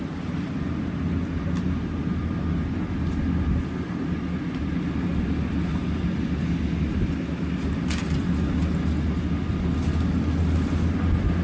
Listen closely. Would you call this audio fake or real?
real